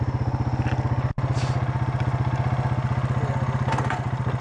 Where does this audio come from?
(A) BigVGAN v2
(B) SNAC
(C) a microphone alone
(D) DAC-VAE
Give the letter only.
C